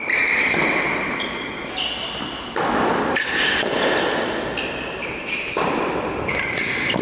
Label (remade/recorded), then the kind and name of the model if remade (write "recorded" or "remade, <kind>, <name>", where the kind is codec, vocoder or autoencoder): recorded